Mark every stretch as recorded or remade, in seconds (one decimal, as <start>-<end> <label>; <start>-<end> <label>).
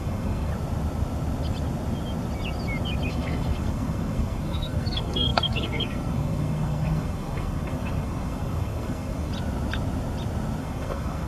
0.0-0.5 remade; 0.5-3.1 recorded; 3.1-9.3 remade; 9.3-10.6 recorded; 10.6-11.3 remade